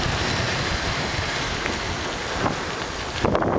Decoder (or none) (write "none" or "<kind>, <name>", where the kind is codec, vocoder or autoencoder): none